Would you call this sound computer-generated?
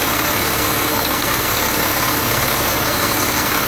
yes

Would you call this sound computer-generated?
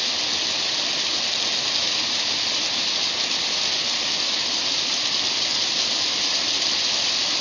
no